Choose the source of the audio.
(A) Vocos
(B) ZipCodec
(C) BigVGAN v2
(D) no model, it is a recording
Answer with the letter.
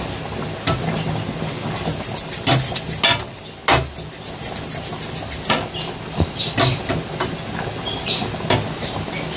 D